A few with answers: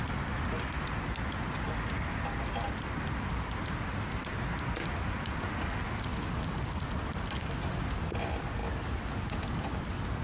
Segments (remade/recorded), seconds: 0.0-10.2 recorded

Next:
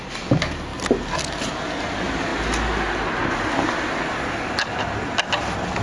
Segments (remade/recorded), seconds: 0.0-5.8 recorded

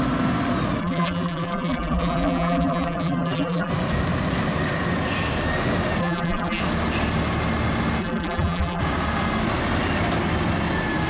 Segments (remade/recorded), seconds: 0.0-0.8 recorded; 0.8-3.7 remade; 3.7-6.0 recorded; 6.0-6.6 remade; 6.6-8.0 recorded; 8.0-8.8 remade; 8.8-11.1 recorded